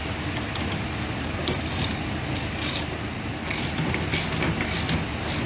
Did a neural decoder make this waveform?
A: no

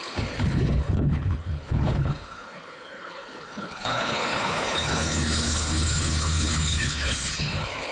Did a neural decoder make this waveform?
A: yes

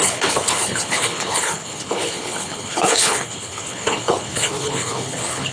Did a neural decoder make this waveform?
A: yes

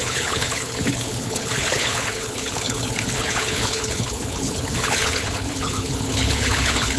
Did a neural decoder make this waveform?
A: yes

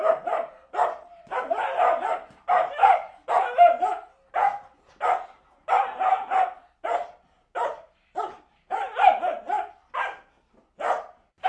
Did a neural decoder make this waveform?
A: no